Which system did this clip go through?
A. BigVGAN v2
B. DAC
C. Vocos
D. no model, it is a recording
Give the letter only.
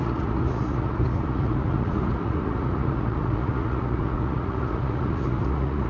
C